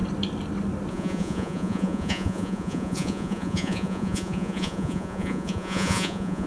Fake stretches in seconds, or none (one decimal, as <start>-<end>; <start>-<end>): 0.9-6.5